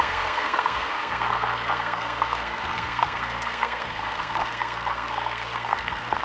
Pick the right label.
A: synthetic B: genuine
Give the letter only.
A